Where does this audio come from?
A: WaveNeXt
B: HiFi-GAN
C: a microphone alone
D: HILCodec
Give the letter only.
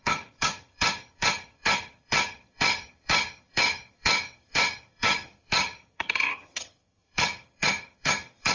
B